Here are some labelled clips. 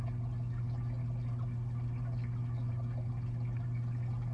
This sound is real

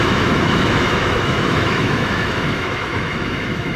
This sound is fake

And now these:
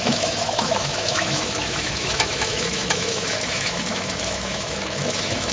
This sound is fake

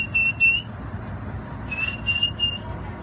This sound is real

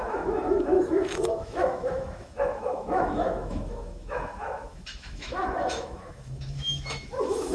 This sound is fake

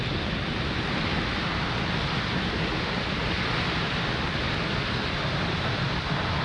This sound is real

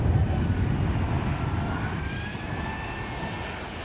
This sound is real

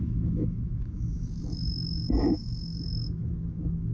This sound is fake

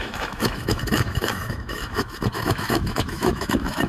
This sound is fake